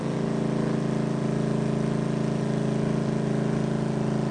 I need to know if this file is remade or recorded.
recorded